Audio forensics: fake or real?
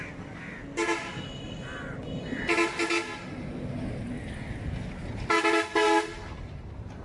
real